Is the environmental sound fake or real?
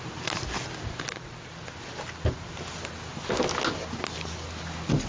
real